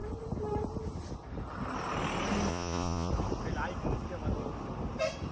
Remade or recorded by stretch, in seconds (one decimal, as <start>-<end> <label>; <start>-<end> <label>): 0.0-2.5 recorded; 2.5-3.1 remade; 3.1-5.3 recorded